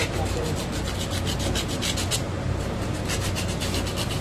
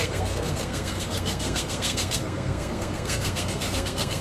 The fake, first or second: second